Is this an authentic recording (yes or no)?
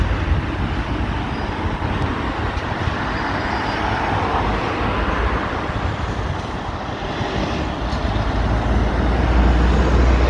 yes